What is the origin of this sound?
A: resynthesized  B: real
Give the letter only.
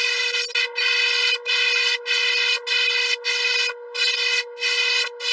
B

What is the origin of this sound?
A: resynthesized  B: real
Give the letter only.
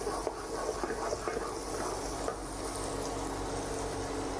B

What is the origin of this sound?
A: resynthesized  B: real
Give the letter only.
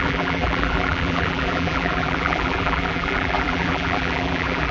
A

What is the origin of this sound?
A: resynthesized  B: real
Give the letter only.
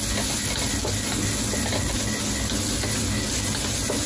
B